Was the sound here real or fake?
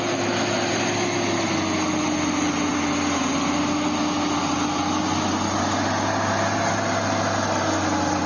real